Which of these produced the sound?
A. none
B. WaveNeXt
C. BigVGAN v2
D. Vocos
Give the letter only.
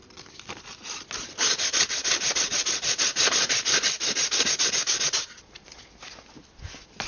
A